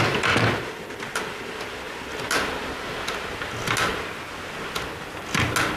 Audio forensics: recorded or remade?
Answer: recorded